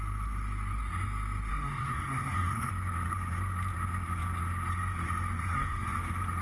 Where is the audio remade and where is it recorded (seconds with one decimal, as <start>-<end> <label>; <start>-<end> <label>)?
0.0-1.5 recorded; 1.5-2.7 remade; 2.7-5.4 recorded; 5.4-5.9 remade; 5.9-6.4 recorded